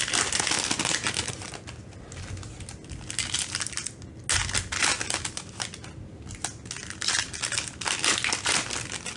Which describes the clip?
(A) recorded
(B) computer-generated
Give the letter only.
A